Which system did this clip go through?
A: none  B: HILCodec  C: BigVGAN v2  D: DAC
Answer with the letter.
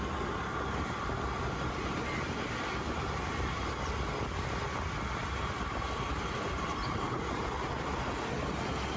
A